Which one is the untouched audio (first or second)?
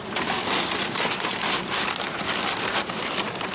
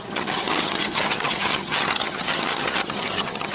first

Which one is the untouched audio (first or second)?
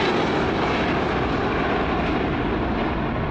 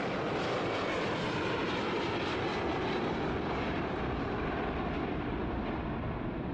first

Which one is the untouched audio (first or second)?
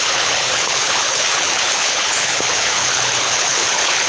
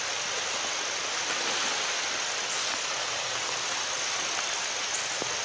second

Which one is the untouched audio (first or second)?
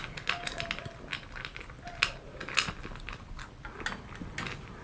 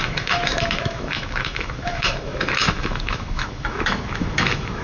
first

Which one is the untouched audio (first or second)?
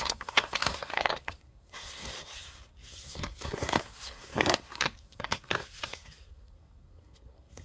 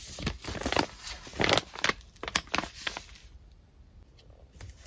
second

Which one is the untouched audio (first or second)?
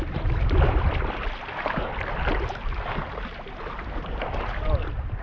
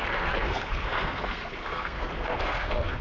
first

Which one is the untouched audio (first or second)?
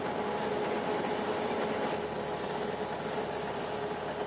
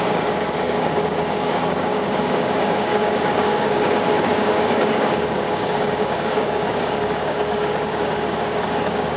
first